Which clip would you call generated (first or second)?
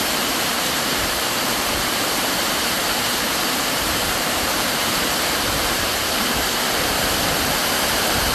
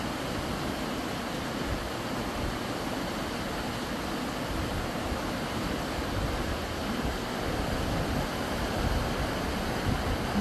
first